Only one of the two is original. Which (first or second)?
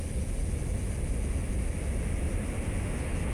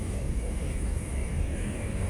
first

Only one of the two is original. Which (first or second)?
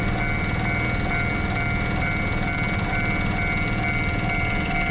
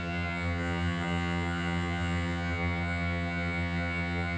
first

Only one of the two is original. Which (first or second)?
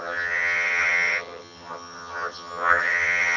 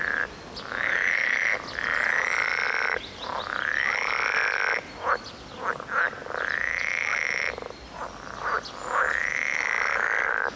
second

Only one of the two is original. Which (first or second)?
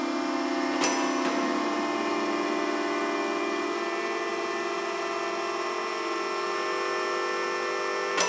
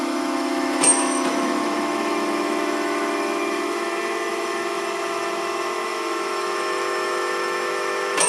first